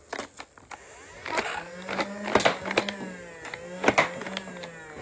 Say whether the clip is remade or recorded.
recorded